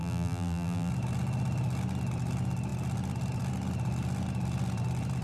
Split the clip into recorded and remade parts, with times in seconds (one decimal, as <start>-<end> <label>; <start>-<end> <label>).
0.0-0.9 remade; 0.9-5.2 recorded